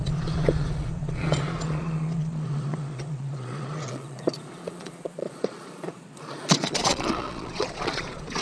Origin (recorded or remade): remade